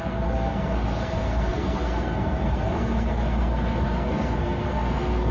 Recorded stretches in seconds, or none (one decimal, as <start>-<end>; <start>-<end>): none